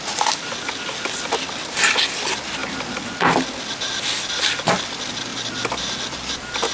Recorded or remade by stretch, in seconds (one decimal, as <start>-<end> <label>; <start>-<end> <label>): 0.0-6.7 recorded